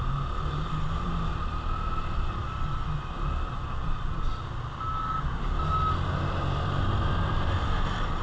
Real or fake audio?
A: real